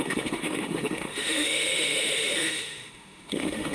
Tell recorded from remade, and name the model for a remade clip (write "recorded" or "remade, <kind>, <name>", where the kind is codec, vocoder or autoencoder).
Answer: remade, autoencoder, DAC-VAE